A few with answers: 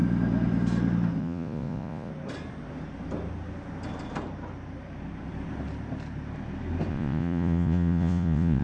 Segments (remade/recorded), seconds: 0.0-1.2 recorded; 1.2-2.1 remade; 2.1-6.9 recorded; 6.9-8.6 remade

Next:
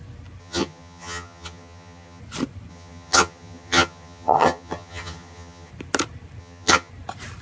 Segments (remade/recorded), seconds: 0.0-0.4 recorded; 0.4-2.2 remade; 2.2-2.7 recorded; 2.7-5.7 remade; 5.7-6.4 recorded; 6.4-6.9 remade; 6.9-7.4 recorded

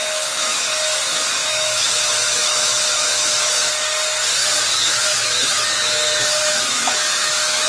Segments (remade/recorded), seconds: 0.0-0.7 remade; 0.7-1.4 recorded; 1.4-3.7 remade; 3.7-4.7 recorded; 4.7-7.7 remade

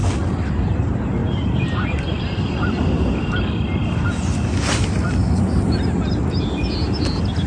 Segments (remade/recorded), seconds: 0.0-1.2 recorded; 1.2-3.2 remade; 3.2-5.2 recorded; 5.2-5.8 remade; 5.8-7.5 recorded